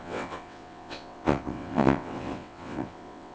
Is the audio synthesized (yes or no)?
yes